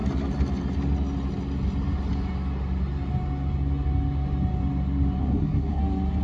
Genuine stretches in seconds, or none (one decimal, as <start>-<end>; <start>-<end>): 0.0-5.2; 5.8-6.2